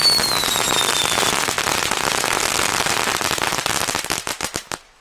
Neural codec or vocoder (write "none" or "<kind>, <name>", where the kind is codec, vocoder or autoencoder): none